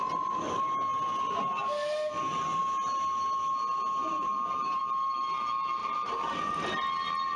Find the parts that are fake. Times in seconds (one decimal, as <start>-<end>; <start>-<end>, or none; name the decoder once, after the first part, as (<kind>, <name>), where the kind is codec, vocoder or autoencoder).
4.0-4.8 (vocoder, BigVGAN v2); 5.8-6.3